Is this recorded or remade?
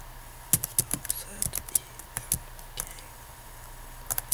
recorded